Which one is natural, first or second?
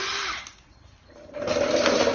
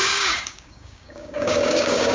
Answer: first